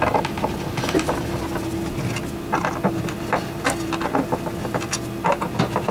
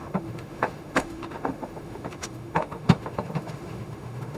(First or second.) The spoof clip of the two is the second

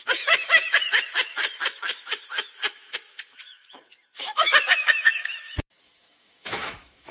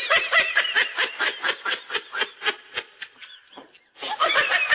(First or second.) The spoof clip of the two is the first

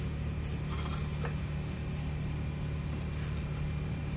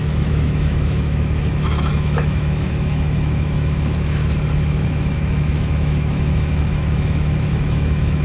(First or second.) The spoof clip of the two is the second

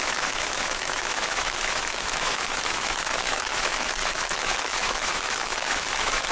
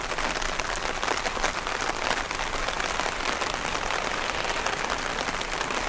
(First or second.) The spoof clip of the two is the first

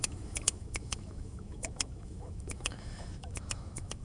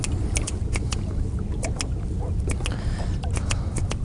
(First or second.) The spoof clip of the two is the first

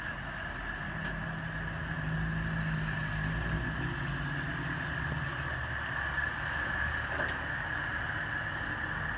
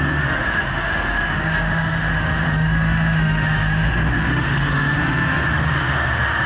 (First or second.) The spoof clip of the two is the second